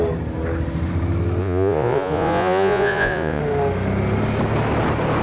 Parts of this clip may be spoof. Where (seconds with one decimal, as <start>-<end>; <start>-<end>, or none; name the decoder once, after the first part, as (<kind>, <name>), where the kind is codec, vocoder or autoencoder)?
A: 1.4-3.4 (vocoder, Vocos)